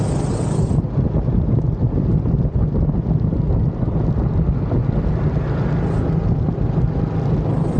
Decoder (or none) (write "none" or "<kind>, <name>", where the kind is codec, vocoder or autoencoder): none